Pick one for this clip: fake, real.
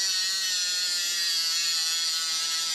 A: real